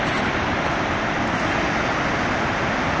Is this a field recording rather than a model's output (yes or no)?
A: yes